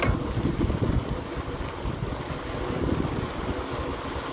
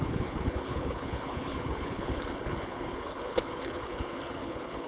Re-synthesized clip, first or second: second